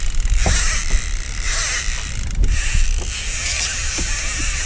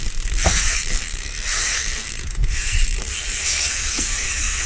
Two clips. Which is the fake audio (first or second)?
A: second